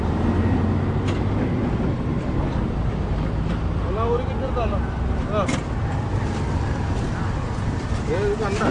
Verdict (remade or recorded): recorded